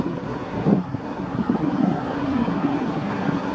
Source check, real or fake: fake